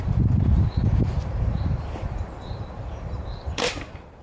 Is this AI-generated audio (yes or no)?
yes